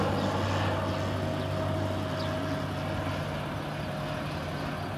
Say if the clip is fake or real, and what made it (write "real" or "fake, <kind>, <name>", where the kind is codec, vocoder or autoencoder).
real